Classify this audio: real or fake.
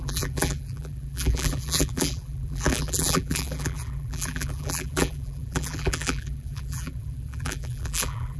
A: fake